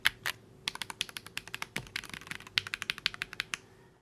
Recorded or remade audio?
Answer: recorded